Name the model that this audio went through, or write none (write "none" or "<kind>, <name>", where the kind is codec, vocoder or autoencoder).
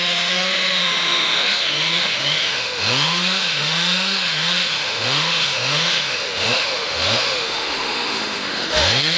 autoencoder, DAC-VAE